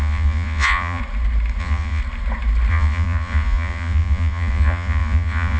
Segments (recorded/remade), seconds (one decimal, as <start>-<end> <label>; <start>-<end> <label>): 0.0-1.0 remade; 1.0-1.6 recorded; 1.6-2.0 remade; 2.0-2.7 recorded; 2.7-5.6 remade